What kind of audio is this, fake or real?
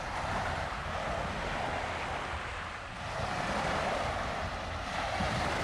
real